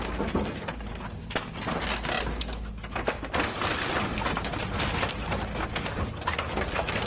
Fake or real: real